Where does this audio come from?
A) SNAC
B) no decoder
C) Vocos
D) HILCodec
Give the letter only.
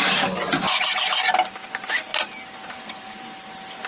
B